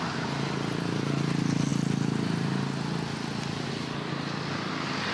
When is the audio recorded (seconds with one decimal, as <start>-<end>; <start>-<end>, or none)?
0.0-5.1